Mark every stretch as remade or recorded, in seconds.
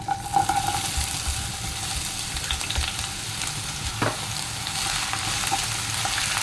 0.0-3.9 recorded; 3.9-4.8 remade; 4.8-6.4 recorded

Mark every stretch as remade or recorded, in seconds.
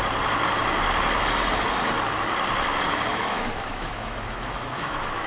0.0-3.1 recorded; 3.1-5.3 remade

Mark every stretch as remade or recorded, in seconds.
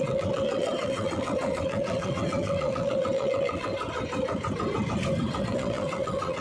0.0-3.7 remade; 3.7-5.4 recorded; 5.4-6.4 remade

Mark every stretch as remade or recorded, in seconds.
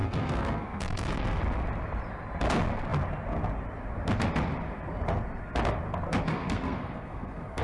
0.0-1.4 remade; 1.4-6.3 recorded; 6.3-7.6 remade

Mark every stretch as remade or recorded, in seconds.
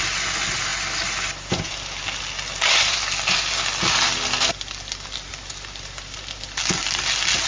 0.0-5.3 recorded; 5.3-6.4 remade; 6.4-7.5 recorded